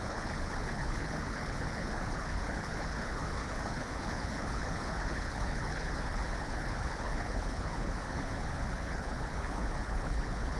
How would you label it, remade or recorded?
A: remade